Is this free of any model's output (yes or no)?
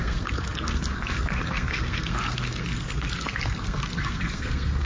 no